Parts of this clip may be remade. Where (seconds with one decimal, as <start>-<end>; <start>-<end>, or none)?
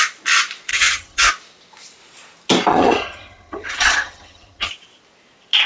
0.7-1.3; 2.7-4.7